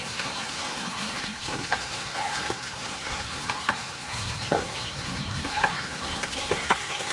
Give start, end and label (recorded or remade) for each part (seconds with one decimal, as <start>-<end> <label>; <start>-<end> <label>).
0.0-7.1 remade